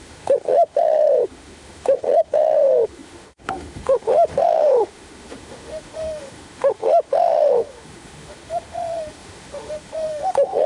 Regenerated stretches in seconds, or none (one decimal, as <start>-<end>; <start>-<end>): 0.0-10.7